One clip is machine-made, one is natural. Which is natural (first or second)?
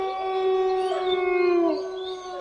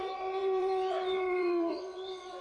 first